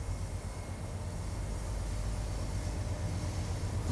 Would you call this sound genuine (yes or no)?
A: yes